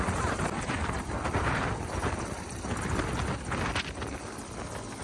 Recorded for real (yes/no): yes